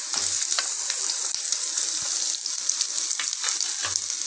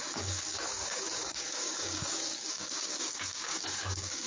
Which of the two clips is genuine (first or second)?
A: first